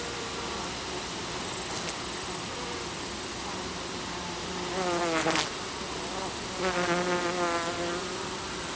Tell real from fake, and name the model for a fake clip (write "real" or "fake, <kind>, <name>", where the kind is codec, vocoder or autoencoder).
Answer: real